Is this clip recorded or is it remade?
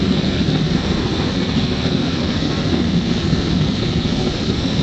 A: remade